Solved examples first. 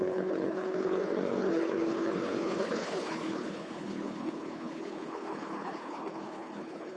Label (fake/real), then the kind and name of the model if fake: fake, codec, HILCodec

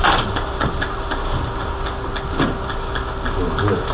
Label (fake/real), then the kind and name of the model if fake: real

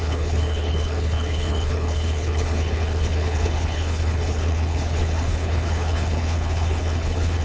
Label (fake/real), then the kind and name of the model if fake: fake, codec, HILCodec